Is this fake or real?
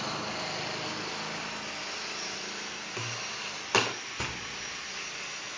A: real